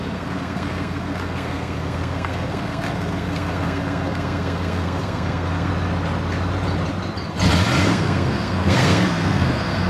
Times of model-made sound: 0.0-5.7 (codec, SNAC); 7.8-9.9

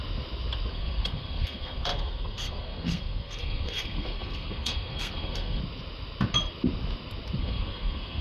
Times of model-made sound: 0.7-5.6 (codec, SNAC); 7.4-8.2

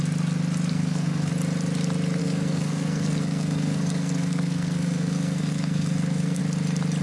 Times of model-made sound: 0.7-1.3 (codec, SNAC); 2.2-6.4

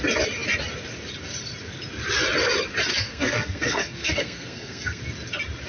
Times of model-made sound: 2.9-5.0 (codec, SNAC)

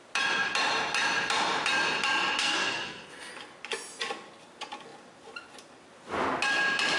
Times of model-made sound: 2.4-3.3 (codec, SNAC)

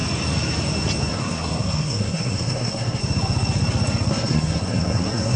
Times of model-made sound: 1.1-3.0 (codec, SNAC); 4.1-5.4